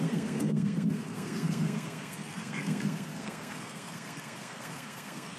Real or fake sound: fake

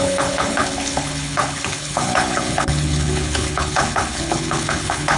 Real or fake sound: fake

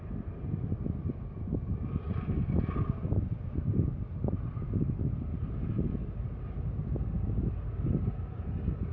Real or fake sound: real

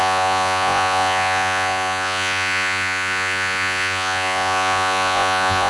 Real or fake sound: fake